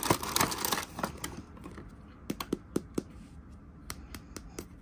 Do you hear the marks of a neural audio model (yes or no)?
no